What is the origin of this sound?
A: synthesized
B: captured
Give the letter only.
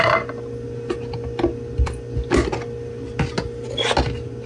B